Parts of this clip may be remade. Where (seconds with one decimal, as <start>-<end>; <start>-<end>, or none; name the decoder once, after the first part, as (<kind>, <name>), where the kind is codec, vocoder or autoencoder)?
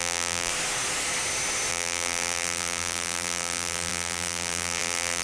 0.0-0.5 (vocoder, BigVGAN v2); 1.7-5.2